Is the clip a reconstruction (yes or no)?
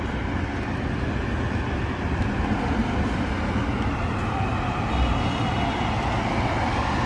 no